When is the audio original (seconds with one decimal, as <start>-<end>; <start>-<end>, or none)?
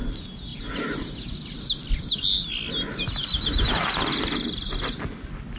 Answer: 0.0-5.6